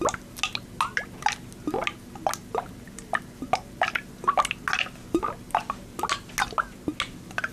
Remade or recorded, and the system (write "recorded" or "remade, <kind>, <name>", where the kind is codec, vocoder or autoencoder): recorded